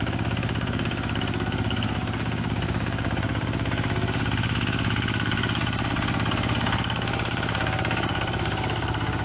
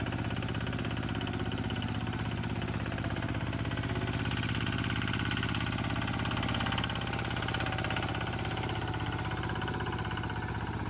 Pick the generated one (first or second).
first